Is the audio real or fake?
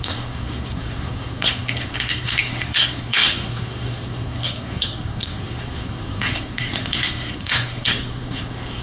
fake